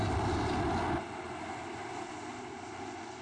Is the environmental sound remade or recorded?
recorded